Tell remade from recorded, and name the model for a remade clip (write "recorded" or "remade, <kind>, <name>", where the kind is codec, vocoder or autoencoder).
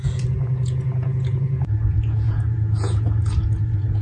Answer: remade, vocoder, Vocos